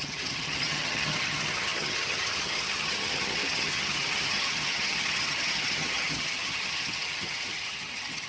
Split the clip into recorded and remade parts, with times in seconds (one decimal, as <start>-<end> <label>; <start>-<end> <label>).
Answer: 0.0-8.3 remade